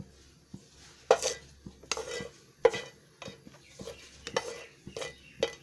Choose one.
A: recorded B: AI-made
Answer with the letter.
A